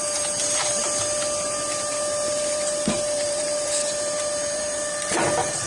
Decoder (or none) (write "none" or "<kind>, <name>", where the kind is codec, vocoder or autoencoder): vocoder, BigVGAN v2